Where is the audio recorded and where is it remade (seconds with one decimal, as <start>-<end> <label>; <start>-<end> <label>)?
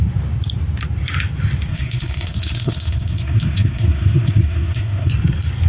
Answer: 0.0-1.7 recorded; 1.7-5.1 remade; 5.1-5.7 recorded